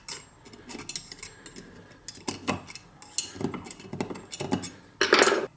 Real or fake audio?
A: real